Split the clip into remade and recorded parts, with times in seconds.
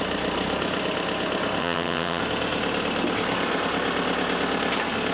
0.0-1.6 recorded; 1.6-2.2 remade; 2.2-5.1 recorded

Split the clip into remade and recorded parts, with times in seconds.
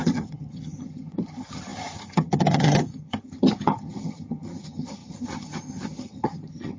0.0-6.8 remade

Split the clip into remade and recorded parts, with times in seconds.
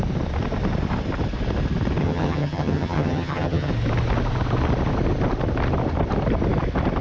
0.0-2.0 recorded; 2.0-3.7 remade; 3.7-7.0 recorded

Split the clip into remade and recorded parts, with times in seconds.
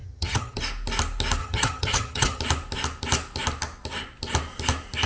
0.0-0.6 remade; 0.6-1.4 recorded; 1.4-2.4 remade; 2.4-5.1 recorded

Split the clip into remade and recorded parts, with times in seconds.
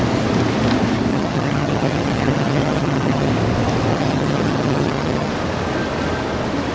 0.0-1.1 recorded; 1.1-3.3 remade; 3.3-3.9 recorded; 3.9-5.3 remade; 5.3-6.7 recorded